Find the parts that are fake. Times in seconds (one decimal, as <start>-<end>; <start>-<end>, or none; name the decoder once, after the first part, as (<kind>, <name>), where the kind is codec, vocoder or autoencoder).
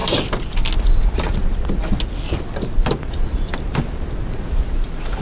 3.1-3.5 (vocoder, Vocos); 4.3-5.2